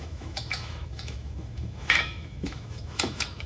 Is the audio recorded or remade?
remade